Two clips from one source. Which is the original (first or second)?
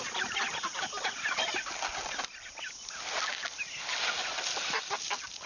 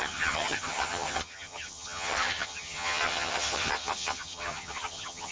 first